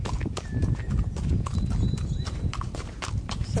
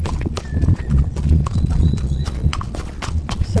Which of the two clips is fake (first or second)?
second